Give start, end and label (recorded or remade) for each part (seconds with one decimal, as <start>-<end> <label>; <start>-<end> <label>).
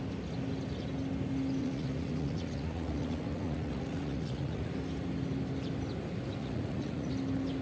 0.0-1.6 recorded; 1.6-4.7 remade; 4.7-6.4 recorded; 6.4-7.1 remade; 7.1-7.6 recorded